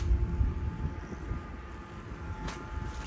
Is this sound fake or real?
real